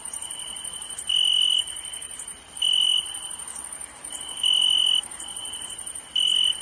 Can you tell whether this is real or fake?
real